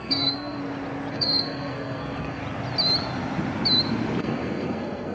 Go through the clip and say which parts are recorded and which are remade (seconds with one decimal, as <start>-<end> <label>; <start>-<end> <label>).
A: 0.0-0.6 remade; 0.6-1.1 recorded; 1.1-2.4 remade; 2.4-4.2 recorded; 4.2-5.1 remade